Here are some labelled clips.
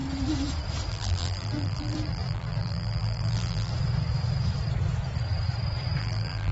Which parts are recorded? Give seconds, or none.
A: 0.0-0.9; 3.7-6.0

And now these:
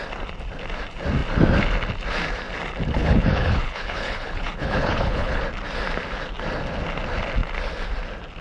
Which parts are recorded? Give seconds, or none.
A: 0.0-3.0; 5.4-8.4

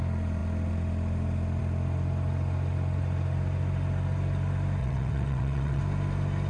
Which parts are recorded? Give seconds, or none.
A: 0.0-4.8; 5.8-6.5

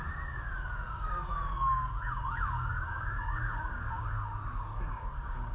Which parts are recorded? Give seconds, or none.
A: 0.0-0.7

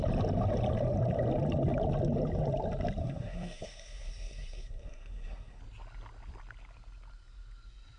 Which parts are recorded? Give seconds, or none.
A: 0.0-3.0; 5.6-8.0

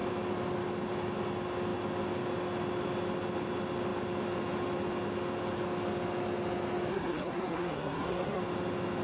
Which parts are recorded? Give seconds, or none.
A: 0.0-6.9; 8.4-9.0

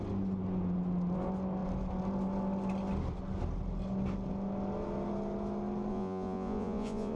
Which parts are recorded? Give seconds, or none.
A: 0.0-5.9

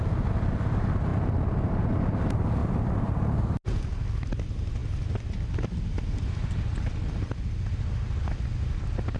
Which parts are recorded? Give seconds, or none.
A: 0.0-1.1; 1.7-2.6; 3.1-9.2